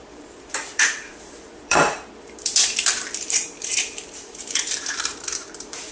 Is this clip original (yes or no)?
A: no